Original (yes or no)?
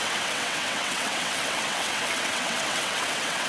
no